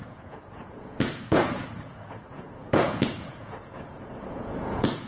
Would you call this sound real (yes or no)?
no